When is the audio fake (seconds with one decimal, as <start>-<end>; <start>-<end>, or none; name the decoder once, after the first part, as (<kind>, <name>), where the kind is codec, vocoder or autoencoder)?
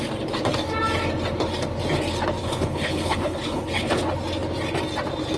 2.4-4.0 (codec, HILCodec)